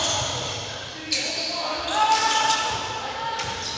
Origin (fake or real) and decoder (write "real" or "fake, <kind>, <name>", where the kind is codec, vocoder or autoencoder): real